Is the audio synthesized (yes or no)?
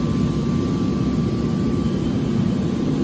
no